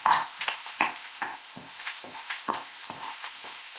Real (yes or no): no